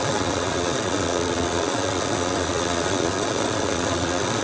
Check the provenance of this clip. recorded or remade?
remade